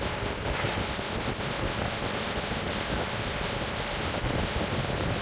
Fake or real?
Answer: real